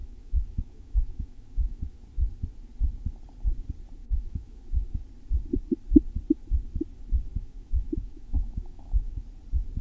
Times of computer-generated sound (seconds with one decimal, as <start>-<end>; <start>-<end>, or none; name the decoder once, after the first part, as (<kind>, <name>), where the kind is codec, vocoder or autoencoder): 0.0-2.0 (autoencoder, DAC-VAE); 4.0-4.9; 7.4-9.2